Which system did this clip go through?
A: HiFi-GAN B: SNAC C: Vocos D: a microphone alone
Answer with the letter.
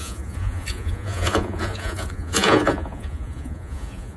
C